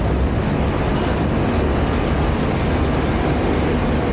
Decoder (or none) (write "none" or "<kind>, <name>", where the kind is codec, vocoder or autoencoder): none